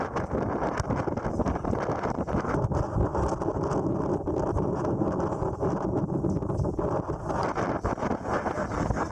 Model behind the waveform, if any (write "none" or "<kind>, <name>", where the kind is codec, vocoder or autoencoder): none